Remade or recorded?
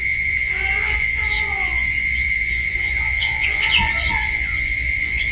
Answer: remade